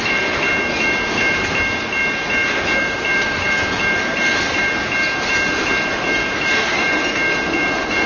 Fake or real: real